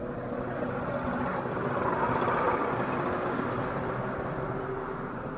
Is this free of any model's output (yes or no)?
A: yes